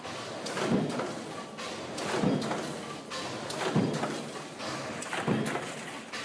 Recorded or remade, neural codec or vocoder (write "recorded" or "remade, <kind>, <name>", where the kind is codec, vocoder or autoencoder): recorded